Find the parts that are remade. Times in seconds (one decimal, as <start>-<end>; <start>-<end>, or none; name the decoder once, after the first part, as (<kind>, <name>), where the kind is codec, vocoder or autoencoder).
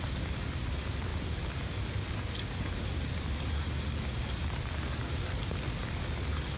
none